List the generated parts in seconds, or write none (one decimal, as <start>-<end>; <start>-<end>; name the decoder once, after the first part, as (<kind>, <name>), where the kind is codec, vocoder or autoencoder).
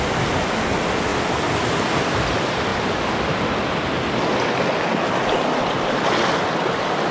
none